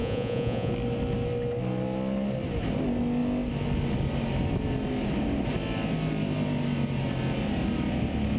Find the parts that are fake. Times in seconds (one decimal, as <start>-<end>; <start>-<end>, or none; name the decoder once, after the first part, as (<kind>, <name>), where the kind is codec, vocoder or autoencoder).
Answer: 0.0-0.7 (vocoder, Vocos)